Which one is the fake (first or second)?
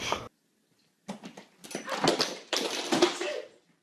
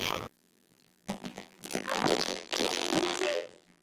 second